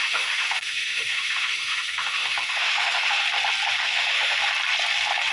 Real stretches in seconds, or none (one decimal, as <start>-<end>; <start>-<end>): 3.2-3.8; 4.5-5.3